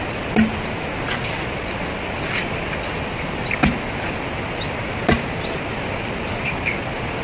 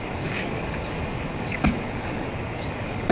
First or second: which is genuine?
first